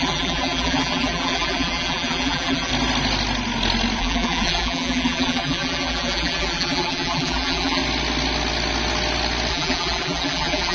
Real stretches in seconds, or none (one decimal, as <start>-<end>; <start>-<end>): 2.7-4.0; 7.8-9.5